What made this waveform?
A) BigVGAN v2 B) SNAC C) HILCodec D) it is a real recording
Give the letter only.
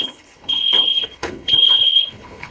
C